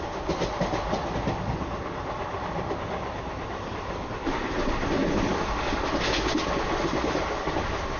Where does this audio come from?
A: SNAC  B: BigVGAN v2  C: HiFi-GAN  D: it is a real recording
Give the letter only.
D